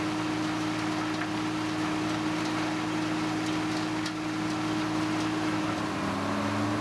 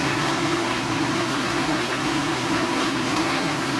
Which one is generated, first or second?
second